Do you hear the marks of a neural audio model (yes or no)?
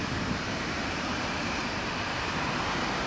yes